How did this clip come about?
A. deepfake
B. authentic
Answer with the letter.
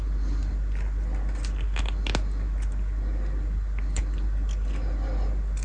B